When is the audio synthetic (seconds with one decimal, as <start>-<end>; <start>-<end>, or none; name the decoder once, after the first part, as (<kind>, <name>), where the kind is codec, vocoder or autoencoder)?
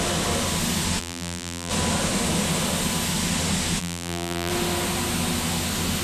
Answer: 1.0-1.7 (vocoder, BigVGAN v2); 3.8-4.5